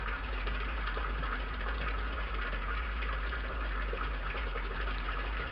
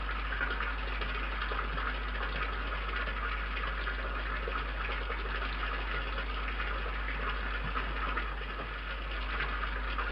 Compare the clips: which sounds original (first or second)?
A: second